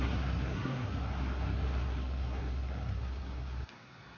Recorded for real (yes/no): no